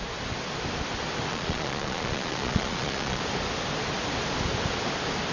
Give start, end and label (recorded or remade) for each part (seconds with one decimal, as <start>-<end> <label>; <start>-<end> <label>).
0.0-1.3 recorded; 1.3-3.2 remade; 3.2-5.3 recorded